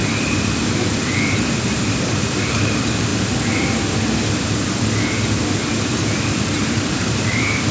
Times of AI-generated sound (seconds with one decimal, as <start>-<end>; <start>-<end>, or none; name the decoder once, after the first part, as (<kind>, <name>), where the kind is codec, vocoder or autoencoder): 1.5-3.1 (vocoder, BigVGAN v2); 6.4-7.7